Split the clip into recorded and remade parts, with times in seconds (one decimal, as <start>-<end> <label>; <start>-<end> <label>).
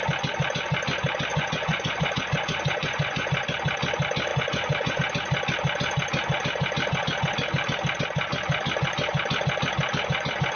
0.0-1.3 recorded; 1.3-3.3 remade; 3.3-4.3 recorded; 4.3-5.0 remade; 5.0-10.6 recorded